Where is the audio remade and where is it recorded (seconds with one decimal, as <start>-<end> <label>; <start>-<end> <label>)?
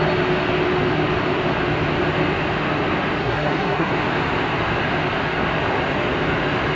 0.0-3.2 recorded; 3.2-3.9 remade; 3.9-6.8 recorded